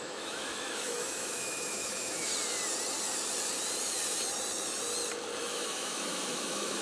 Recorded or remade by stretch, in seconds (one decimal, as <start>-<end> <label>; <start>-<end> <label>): 0.0-2.3 remade; 2.3-5.4 recorded; 5.4-6.8 remade